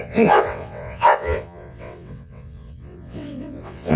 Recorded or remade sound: remade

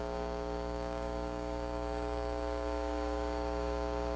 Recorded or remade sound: remade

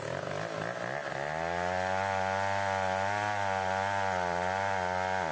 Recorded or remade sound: recorded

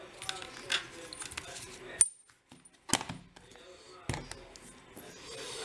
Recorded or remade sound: recorded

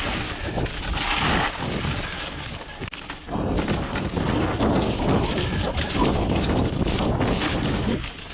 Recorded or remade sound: recorded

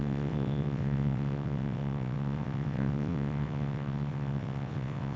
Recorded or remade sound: remade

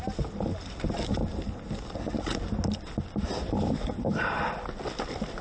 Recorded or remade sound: recorded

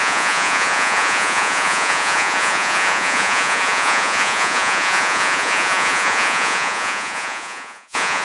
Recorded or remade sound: remade